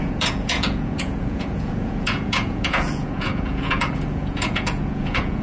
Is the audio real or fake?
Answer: fake